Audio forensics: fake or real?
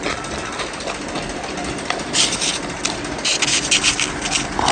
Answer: real